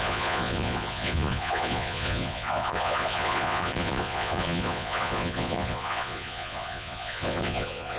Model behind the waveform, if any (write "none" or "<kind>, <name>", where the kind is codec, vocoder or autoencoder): vocoder, Vocos